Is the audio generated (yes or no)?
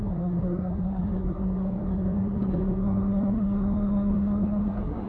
yes